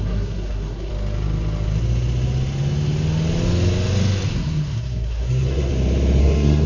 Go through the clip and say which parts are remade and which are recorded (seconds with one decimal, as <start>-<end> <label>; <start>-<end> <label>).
0.0-0.9 remade; 0.9-4.3 recorded; 4.3-5.7 remade; 5.7-6.2 recorded; 6.2-6.7 remade